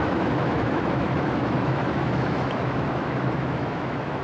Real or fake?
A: fake